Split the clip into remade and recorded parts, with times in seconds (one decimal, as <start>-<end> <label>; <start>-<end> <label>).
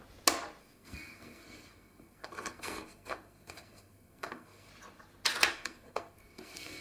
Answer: 0.0-0.6 recorded; 0.6-4.7 remade; 4.7-5.5 recorded; 5.5-6.8 remade